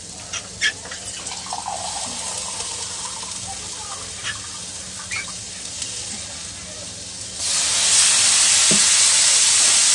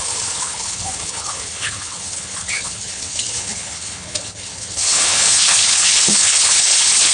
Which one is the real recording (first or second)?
first